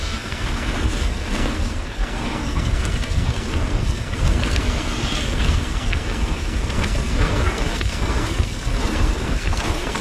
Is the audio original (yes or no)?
no